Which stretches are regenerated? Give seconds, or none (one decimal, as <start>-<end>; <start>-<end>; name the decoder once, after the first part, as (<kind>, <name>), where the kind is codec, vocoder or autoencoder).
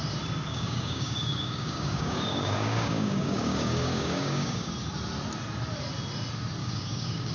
0.5-4.7 (codec, DAC); 6.6-7.3